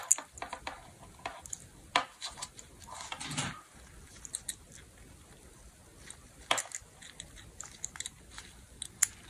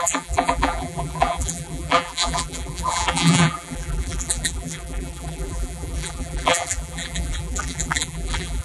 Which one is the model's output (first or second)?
second